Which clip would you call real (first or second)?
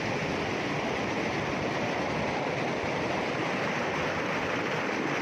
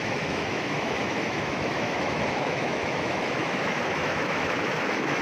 first